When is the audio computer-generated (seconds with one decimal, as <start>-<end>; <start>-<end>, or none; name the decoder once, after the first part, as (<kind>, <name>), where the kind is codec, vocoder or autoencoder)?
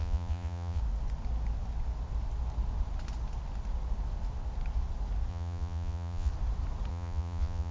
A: 0.0-0.8 (vocoder, Vocos); 5.3-6.3; 6.9-7.7